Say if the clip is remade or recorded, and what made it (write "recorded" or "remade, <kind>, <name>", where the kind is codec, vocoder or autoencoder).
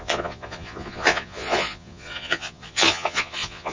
remade, vocoder, Vocos